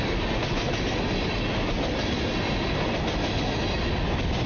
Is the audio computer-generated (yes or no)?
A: no